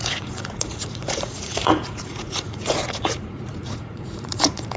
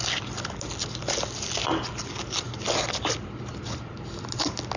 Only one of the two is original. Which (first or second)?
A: second